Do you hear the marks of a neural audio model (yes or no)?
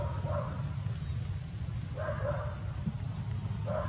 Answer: no